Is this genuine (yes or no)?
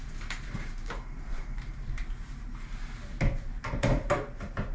no